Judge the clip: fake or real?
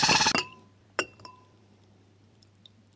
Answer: fake